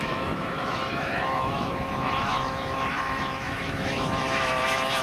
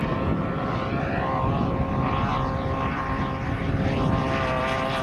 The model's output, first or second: first